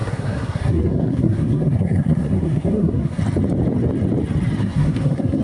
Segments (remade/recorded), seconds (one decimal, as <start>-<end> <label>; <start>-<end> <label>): 0.0-3.2 remade; 3.2-4.6 recorded; 4.6-5.4 remade